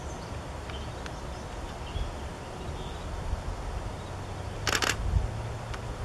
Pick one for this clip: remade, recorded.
recorded